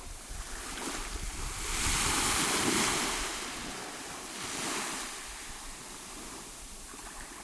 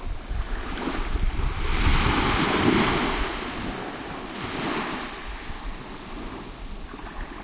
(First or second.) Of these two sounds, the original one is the second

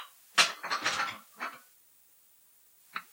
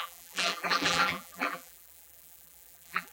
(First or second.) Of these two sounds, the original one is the first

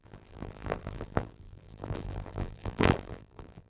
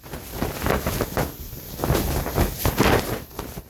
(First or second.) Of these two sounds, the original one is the second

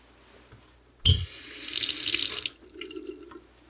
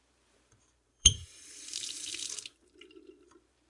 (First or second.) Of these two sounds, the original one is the first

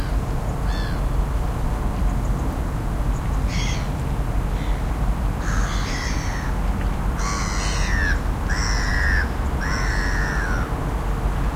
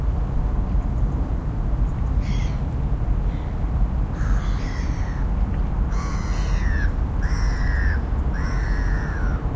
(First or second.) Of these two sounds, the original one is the first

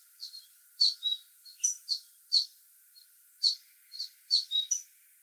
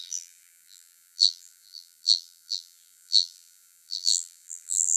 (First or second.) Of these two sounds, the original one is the first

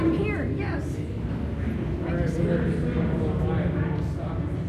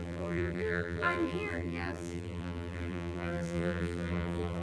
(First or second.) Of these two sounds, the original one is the first